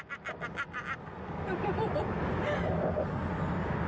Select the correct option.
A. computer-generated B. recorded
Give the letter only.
B